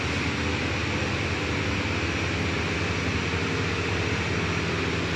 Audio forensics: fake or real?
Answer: real